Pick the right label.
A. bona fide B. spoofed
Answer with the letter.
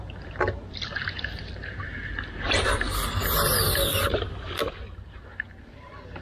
A